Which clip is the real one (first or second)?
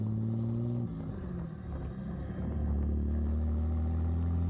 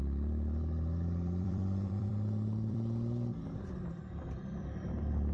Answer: first